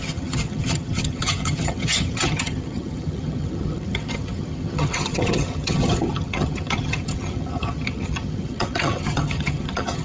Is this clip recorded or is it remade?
remade